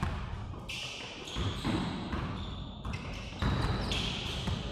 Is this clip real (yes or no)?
yes